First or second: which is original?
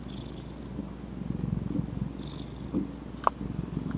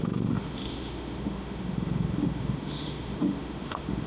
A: first